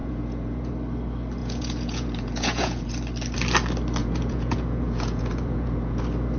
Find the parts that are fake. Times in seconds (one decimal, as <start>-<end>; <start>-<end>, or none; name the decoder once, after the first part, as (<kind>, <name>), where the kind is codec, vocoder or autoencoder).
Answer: 0.0-0.7 (vocoder, Vocos); 1.4-2.9; 4.0-6.0